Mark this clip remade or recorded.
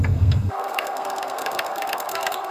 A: remade